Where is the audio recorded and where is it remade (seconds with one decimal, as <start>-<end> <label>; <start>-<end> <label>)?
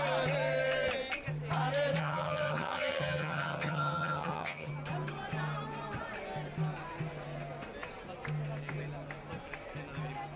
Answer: 0.0-2.0 recorded; 2.0-4.7 remade; 4.7-10.4 recorded